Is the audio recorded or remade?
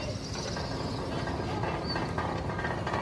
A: recorded